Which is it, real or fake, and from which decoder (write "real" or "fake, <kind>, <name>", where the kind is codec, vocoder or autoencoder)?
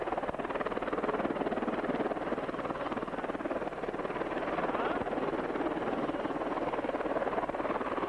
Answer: real